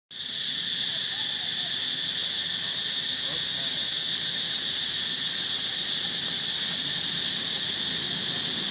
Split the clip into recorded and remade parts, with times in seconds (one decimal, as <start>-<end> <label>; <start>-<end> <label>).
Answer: 0.0-8.7 recorded